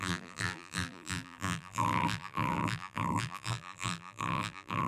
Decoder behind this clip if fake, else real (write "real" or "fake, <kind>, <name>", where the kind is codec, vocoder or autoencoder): fake, vocoder, BigVGAN v2